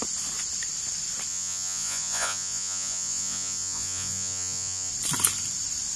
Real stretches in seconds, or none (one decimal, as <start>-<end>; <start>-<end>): 0.0-1.3; 4.9-6.0